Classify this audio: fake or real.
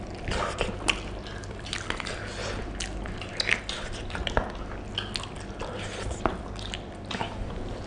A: real